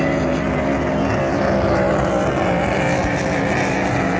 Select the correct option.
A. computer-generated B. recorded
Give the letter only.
B